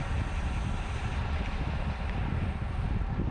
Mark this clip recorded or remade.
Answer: remade